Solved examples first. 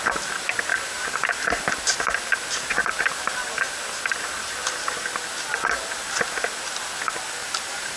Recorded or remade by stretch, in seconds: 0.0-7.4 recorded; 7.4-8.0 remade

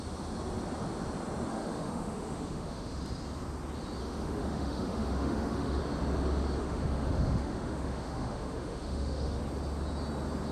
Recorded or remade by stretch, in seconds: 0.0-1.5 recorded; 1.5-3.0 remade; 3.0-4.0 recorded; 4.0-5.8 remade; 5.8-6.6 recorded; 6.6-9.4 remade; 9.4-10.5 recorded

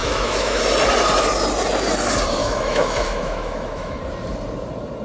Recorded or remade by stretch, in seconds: 0.0-0.6 remade; 0.6-2.4 recorded; 2.4-4.0 remade; 4.0-5.0 recorded

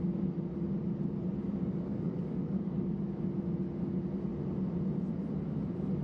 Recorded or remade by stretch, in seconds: 0.0-1.7 recorded; 1.7-2.9 remade; 2.9-6.0 recorded